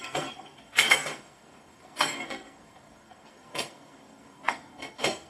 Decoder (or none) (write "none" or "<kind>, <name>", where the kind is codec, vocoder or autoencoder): codec, SNAC